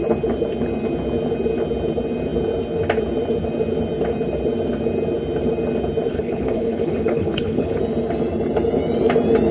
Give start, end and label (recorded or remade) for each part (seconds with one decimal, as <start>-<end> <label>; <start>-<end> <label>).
0.0-6.1 recorded; 6.1-7.8 remade; 7.8-9.5 recorded